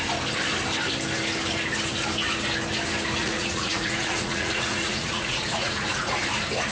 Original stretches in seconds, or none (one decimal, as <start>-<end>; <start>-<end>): 0.0-3.2; 6.2-6.7